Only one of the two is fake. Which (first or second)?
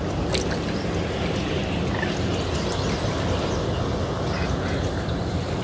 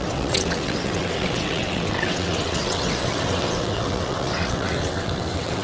second